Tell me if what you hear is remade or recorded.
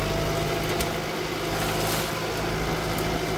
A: recorded